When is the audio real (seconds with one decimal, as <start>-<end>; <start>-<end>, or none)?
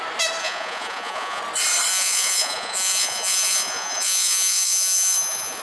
0.0-0.4; 1.4-1.9